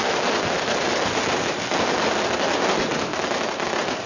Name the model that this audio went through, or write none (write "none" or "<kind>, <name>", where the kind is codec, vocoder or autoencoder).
none